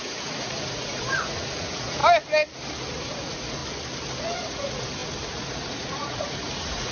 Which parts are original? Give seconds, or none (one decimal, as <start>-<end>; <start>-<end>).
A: 2.0-3.0; 3.6-4.2